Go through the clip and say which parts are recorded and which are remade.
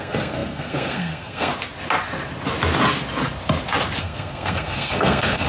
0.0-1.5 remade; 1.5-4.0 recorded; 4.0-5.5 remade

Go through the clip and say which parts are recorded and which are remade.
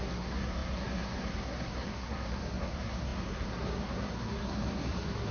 0.0-5.3 remade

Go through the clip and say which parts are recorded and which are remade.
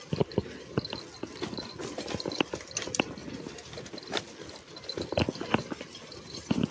0.0-6.7 recorded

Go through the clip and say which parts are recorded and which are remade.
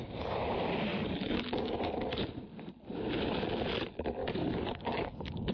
0.0-0.9 recorded; 0.9-2.1 remade; 2.1-4.2 recorded; 4.2-5.5 remade